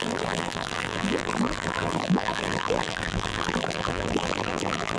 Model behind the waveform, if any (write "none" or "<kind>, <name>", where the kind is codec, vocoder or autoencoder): vocoder, BigVGAN v2